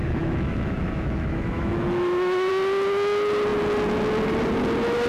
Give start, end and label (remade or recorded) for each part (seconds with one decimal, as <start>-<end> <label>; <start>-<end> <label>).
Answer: 0.0-2.5 remade; 2.5-5.1 recorded